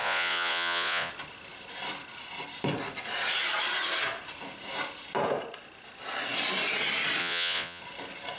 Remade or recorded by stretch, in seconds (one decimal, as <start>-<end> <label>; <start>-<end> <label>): 0.0-1.1 remade; 1.1-7.2 recorded; 7.2-7.8 remade; 7.8-8.4 recorded